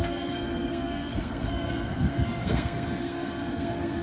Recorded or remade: remade